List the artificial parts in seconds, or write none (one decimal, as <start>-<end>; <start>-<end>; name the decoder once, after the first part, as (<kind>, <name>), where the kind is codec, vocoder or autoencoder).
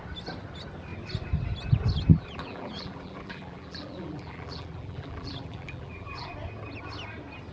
2.1-6.3 (vocoder, BigVGAN v2)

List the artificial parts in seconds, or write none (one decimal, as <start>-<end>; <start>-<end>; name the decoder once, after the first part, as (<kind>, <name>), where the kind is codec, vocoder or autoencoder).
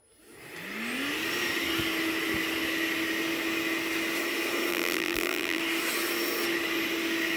4.7-5.6 (vocoder, BigVGAN v2)